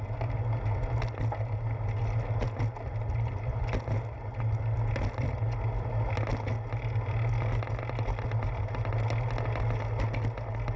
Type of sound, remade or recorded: recorded